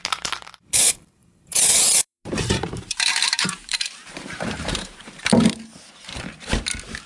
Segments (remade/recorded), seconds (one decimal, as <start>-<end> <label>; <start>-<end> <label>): 0.0-1.2 recorded; 1.2-5.5 remade; 5.5-7.1 recorded